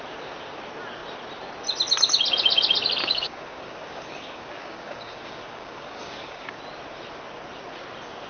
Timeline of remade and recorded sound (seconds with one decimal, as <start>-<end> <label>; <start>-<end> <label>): 0.0-3.0 recorded; 3.0-6.6 remade; 6.6-8.3 recorded